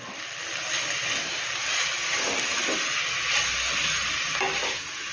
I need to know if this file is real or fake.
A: real